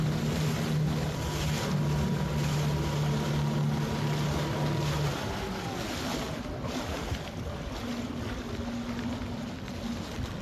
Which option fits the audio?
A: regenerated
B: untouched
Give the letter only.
B